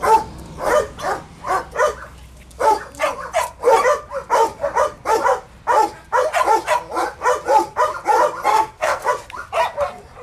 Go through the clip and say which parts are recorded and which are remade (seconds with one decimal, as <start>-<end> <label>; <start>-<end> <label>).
0.0-8.5 recorded; 8.5-9.1 remade; 9.1-10.2 recorded